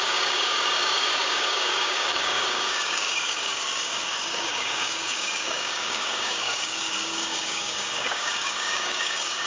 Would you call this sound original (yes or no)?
no